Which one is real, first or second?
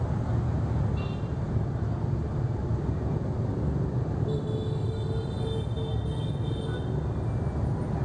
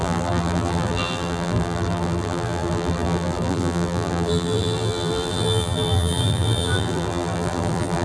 first